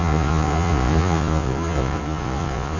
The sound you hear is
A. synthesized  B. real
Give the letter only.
A